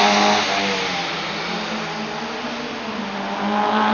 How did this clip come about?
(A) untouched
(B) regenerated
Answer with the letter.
A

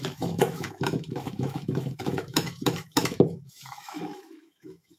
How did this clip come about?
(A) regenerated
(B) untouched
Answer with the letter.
A